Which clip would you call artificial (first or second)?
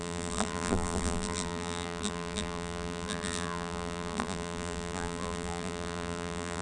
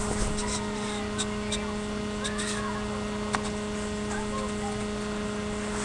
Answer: first